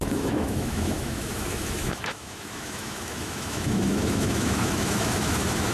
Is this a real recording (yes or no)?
no